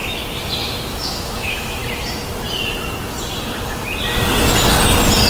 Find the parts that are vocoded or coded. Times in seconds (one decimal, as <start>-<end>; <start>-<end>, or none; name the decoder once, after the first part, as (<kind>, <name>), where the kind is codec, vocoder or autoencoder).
0.9-1.8 (autoencoder, DAC-VAE)